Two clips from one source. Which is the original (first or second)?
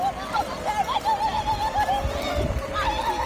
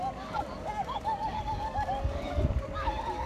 first